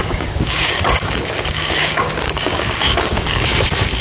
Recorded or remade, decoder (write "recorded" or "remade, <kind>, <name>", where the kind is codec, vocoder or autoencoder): remade, codec, DAC